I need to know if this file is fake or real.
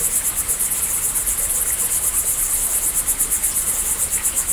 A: real